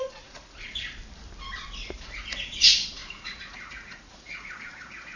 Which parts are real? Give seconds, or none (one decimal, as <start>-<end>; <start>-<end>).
1.0-1.9